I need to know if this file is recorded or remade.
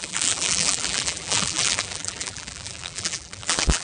remade